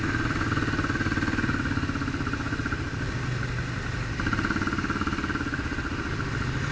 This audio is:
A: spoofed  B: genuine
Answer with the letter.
B